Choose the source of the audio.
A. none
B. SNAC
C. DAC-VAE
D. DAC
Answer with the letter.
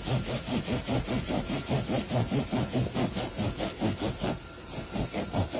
A